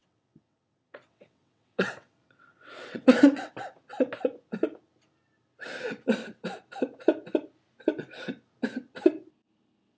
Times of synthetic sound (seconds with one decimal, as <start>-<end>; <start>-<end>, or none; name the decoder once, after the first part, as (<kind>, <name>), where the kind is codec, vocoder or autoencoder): 0.0-3.5 (vocoder, WaveNeXt)